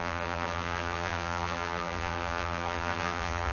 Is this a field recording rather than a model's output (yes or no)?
no